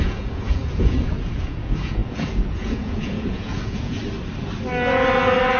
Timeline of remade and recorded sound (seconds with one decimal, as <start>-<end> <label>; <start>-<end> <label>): 0.0-4.0 remade; 4.0-5.6 recorded